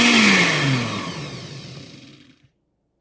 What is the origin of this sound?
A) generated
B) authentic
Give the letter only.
B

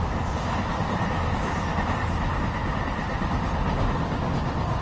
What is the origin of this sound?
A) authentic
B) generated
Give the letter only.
A